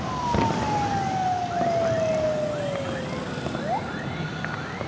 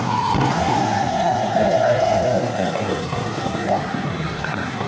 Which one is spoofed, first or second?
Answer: second